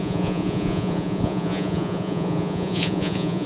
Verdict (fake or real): fake